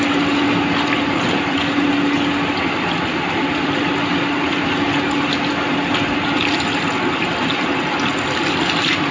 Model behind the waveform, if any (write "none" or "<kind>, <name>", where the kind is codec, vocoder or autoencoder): none